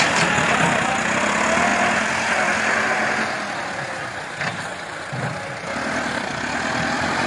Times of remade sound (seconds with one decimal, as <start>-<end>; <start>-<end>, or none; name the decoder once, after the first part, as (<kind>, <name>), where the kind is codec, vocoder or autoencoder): none